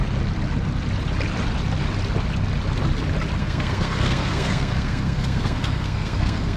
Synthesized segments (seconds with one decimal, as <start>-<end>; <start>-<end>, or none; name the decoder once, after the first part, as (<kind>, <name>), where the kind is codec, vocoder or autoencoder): 3.4-6.6 (codec, SNAC)